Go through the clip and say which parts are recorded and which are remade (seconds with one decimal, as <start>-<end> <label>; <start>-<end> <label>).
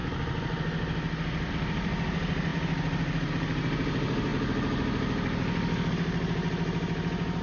0.0-1.5 recorded; 1.5-4.3 remade; 4.3-5.9 recorded; 5.9-7.4 remade